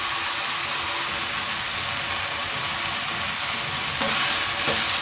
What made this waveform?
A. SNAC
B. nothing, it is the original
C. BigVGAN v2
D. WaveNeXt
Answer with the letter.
B